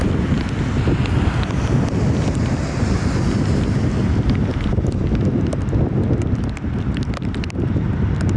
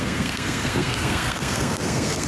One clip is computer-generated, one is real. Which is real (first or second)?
first